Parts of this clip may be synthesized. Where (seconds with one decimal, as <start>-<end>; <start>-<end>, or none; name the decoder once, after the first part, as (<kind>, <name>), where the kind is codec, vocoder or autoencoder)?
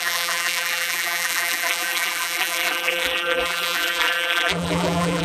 0.0-5.2 (vocoder, BigVGAN v2)